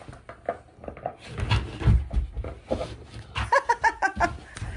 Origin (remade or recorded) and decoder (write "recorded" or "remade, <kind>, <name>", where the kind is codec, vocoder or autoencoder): recorded